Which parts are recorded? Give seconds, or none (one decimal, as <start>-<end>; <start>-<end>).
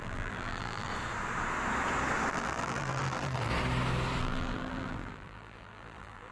0.9-2.3; 3.5-4.2